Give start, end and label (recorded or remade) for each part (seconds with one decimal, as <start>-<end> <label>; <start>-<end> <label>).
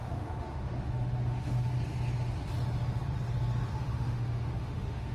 0.0-1.7 remade; 1.7-3.7 recorded; 3.7-5.1 remade